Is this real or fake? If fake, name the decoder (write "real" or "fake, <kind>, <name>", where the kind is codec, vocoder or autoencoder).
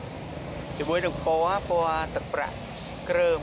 real